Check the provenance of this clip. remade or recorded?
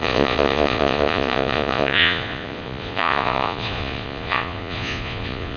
remade